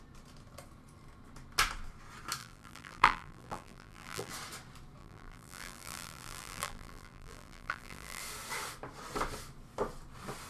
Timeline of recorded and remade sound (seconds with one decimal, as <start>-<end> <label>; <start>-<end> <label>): 0.0-2.4 recorded; 2.4-4.3 remade; 4.3-5.0 recorded; 5.0-8.2 remade; 8.2-10.5 recorded